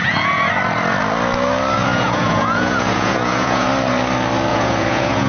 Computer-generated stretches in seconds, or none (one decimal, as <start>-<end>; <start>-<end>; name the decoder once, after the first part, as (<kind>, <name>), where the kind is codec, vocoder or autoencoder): 0.0-0.5 (vocoder, Vocos); 1.9-3.7; 4.5-5.3